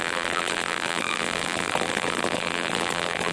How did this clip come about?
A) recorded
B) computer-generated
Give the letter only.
B